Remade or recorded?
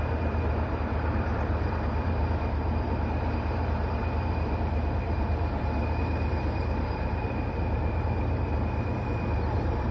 remade